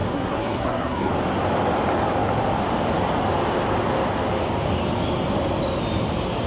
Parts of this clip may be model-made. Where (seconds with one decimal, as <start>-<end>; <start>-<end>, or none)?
0.0-1.1

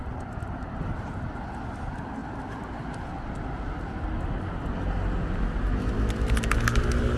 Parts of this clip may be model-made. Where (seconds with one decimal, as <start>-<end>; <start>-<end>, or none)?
none

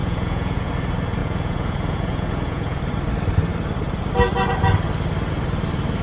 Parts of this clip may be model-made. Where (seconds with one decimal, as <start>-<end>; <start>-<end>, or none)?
0.0-0.7; 1.2-2.8